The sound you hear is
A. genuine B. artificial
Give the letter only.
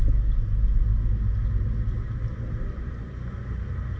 A